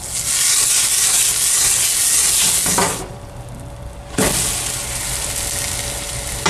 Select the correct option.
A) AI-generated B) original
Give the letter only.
B